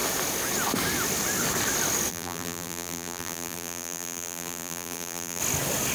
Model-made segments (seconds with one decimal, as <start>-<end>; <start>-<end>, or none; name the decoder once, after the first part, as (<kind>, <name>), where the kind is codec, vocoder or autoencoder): 2.1-5.4 (vocoder, BigVGAN v2)